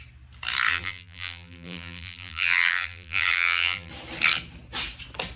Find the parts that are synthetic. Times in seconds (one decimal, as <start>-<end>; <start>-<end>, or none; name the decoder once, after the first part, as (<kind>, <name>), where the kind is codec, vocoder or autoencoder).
0.7-3.9 (vocoder, BigVGAN v2)